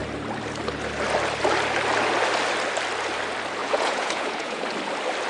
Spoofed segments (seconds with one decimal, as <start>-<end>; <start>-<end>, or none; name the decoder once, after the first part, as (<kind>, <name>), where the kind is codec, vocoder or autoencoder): 3.6-4.6 (vocoder, Vocos)